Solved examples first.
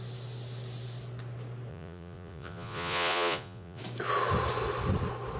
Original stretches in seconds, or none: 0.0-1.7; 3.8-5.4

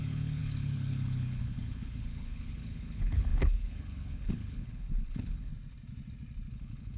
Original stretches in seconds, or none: 5.5-6.5

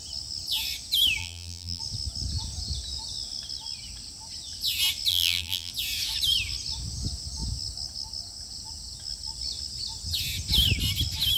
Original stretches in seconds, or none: 0.0-1.2; 1.8-5.1; 5.7-11.4

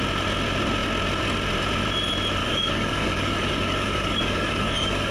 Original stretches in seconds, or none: 0.0-2.4

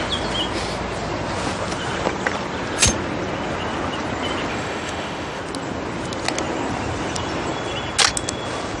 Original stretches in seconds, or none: 0.0-4.5; 5.4-8.8

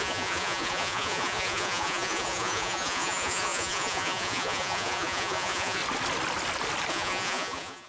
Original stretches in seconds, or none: 5.8-6.9

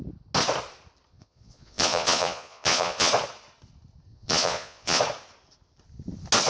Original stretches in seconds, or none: 0.0-1.1; 3.1-4.1; 5.0-6.5

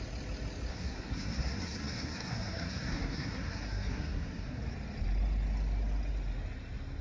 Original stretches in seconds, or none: 0.0-0.7; 4.6-7.0